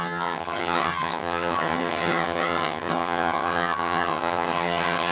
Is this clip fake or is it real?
fake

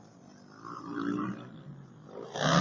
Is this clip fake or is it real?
real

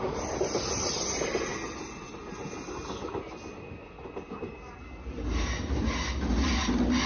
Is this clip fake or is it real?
real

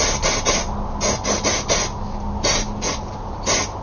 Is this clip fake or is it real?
real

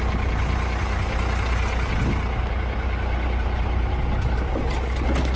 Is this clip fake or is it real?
real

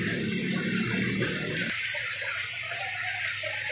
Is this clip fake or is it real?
real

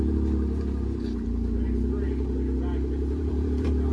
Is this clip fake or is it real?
fake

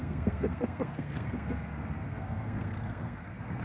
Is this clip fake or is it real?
fake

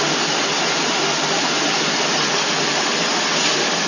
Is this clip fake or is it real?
real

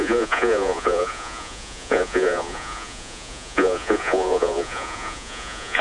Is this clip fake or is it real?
fake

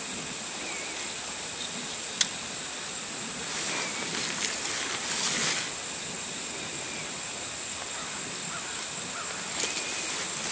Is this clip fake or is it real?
real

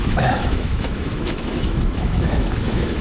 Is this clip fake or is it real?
fake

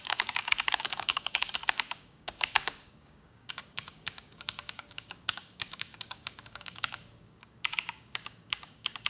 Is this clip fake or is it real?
fake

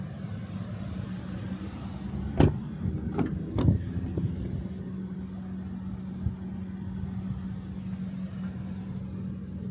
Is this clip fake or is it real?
real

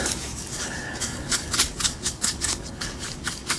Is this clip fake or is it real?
fake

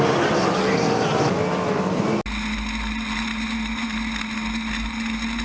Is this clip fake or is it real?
real